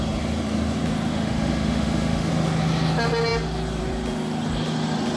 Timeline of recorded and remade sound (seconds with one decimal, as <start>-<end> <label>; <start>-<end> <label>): 0.0-1.1 recorded; 1.1-2.3 remade; 2.3-5.2 recorded